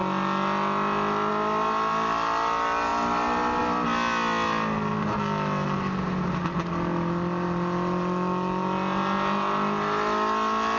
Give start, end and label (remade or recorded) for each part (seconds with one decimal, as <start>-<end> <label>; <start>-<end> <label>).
0.0-10.8 recorded